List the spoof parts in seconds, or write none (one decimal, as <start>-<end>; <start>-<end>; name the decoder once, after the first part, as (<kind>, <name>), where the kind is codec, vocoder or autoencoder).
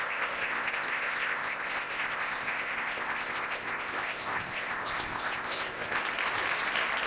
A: 0.0-6.0 (codec, ZipCodec)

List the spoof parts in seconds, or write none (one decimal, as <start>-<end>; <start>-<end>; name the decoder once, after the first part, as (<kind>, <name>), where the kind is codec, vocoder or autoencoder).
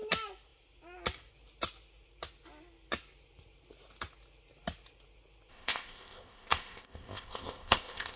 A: 5.5-8.2 (codec, ZipCodec)